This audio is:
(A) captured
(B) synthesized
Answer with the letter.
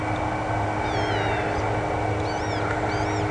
A